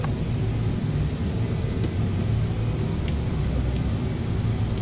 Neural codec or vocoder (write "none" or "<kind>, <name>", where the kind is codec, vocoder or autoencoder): none